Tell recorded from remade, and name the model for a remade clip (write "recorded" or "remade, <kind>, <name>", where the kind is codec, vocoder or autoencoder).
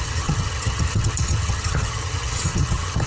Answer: remade, vocoder, HiFi-GAN